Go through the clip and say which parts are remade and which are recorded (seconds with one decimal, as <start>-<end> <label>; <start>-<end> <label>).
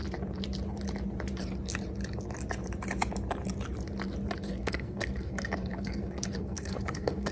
0.0-4.4 recorded; 4.4-7.3 remade